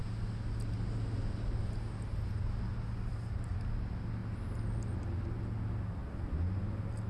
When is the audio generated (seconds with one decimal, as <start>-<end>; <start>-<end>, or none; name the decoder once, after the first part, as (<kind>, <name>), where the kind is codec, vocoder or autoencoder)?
none